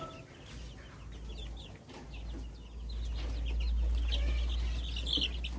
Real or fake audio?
real